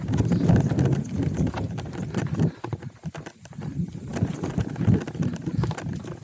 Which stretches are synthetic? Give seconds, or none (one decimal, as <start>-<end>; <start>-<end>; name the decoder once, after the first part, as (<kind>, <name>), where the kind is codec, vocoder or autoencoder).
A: none